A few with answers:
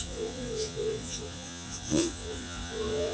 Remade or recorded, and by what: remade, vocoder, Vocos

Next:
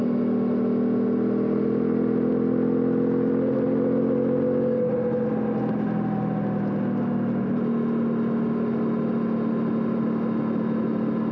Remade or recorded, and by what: recorded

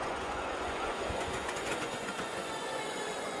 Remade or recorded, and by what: remade, vocoder, Vocos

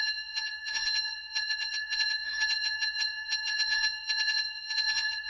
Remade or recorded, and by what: remade, vocoder, Vocos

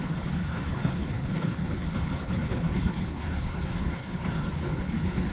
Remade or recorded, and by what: remade, codec, HILCodec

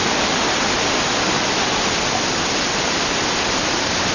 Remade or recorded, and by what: recorded